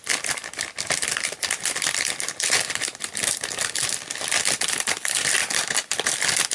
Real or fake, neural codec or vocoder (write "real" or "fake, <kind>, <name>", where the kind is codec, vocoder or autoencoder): real